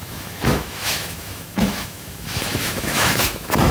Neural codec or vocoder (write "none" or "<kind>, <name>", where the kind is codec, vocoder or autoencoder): autoencoder, DAC-VAE